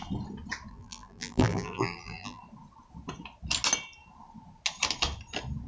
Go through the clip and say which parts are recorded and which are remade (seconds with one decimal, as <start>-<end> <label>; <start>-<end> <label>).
0.0-0.7 recorded; 0.7-2.4 remade; 2.4-5.7 recorded